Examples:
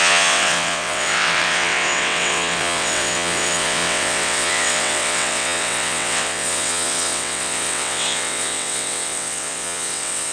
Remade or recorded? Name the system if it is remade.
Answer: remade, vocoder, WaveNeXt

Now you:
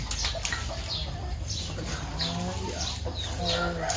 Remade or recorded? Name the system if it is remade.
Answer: recorded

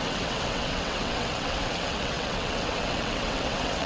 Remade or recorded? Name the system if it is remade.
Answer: remade, vocoder, WaveNeXt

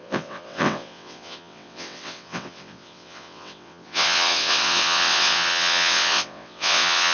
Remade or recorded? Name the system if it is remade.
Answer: remade, vocoder, WaveNeXt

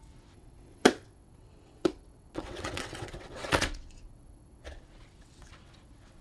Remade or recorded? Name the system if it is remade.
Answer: remade, vocoder, WaveNeXt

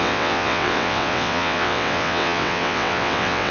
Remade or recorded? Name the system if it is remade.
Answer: remade, vocoder, WaveNeXt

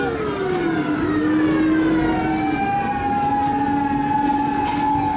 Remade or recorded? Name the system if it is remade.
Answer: recorded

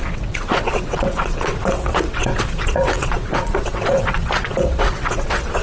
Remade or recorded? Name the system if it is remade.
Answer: remade, vocoder, WaveNeXt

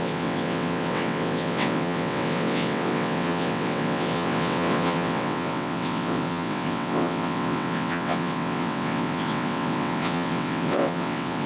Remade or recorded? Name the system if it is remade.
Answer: remade, vocoder, WaveNeXt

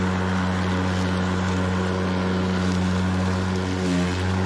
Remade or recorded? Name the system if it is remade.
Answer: recorded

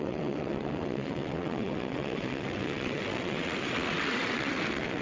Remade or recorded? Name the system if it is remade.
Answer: remade, vocoder, WaveNeXt